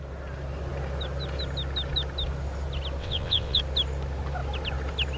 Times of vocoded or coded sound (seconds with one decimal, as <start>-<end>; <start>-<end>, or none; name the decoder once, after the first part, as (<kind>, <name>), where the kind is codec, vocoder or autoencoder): 3.0-3.6 (vocoder, WaveNeXt)